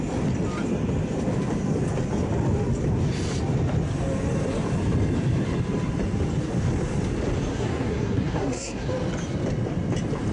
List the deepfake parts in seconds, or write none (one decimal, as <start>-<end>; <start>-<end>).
7.5-8.9